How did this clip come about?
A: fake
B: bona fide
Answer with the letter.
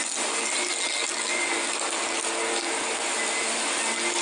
B